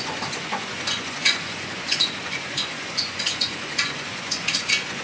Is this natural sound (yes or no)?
no